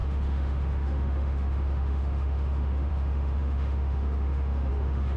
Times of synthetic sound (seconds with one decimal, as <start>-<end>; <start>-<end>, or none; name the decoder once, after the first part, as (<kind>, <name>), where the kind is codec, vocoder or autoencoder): 0.0-5.2 (autoencoder, DAC-VAE)